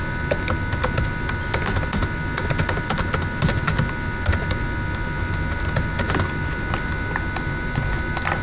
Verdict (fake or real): real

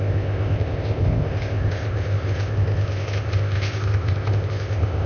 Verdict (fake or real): fake